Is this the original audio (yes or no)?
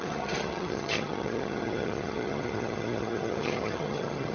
no